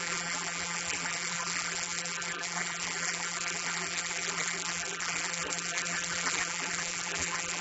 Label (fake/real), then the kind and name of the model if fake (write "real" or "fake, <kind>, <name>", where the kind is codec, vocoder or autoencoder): fake, vocoder, BigVGAN v2